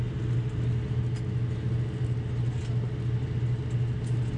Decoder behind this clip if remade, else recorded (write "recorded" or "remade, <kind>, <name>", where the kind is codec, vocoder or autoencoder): recorded